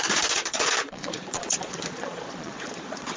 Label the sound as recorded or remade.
remade